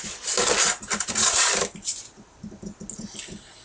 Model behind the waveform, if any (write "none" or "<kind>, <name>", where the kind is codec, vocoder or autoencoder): none